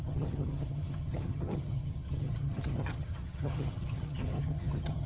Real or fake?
fake